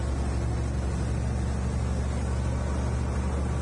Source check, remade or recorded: recorded